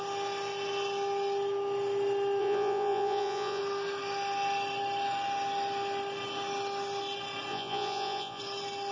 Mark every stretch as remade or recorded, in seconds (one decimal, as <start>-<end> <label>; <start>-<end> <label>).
0.0-2.4 recorded; 2.4-3.6 remade; 3.6-7.5 recorded; 7.5-8.4 remade; 8.4-8.9 recorded